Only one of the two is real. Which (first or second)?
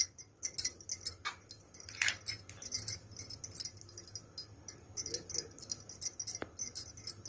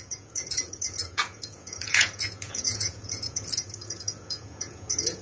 first